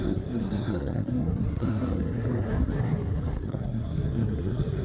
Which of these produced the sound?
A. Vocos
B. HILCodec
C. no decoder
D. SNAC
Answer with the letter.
D